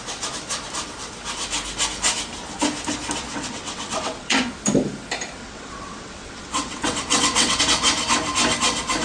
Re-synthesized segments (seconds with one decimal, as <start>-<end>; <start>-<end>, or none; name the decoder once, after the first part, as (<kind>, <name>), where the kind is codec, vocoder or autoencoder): 3.3-4.4 (vocoder, WaveNeXt); 5.4-7.6